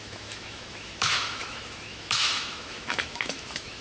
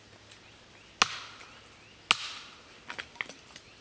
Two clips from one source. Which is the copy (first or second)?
first